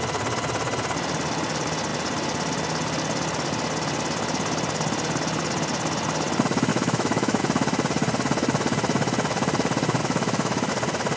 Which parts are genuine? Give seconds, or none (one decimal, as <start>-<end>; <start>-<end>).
0.0-6.7; 7.4-10.0; 10.7-11.2